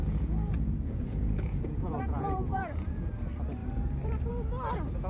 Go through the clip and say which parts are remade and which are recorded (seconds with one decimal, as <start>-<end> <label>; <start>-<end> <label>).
0.0-3.1 remade; 3.1-5.1 recorded